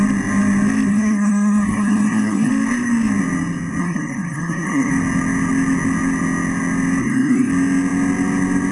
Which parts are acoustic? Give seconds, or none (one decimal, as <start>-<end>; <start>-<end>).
0.0-0.9; 2.5-3.8; 4.9-7.0; 7.5-8.7